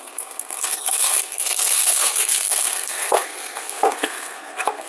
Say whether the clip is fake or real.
fake